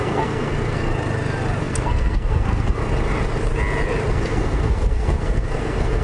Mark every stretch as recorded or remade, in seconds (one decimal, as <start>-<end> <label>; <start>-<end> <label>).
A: 0.0-0.9 remade; 0.9-1.6 recorded; 1.6-2.8 remade; 2.8-4.1 recorded; 4.1-6.0 remade